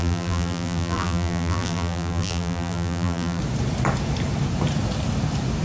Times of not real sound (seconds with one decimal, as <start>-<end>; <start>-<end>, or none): 0.0-3.4